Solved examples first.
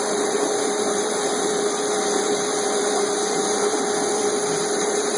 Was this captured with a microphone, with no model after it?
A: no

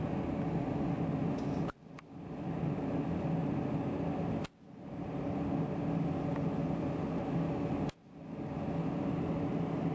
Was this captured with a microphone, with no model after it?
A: yes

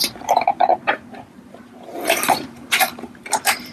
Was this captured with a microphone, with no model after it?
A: no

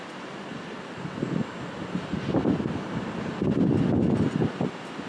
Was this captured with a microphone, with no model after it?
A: yes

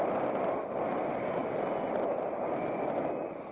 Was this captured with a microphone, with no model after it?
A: no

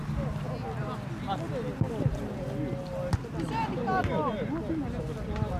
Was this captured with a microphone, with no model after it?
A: yes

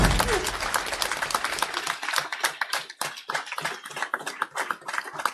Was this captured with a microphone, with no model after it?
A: yes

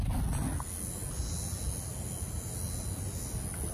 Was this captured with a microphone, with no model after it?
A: yes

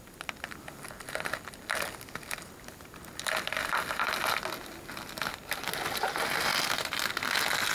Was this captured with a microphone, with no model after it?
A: yes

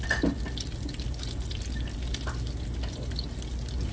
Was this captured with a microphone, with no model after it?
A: yes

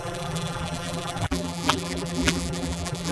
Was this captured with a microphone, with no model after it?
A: no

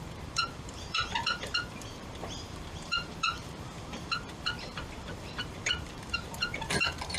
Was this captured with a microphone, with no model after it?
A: no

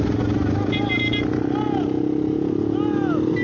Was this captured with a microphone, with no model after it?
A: yes